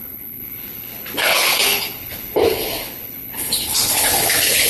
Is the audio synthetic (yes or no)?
yes